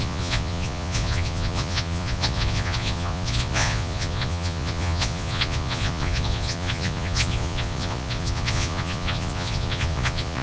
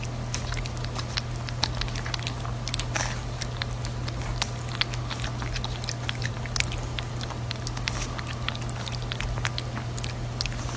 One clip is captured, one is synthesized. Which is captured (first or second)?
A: second